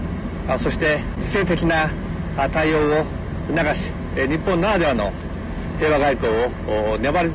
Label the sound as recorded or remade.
recorded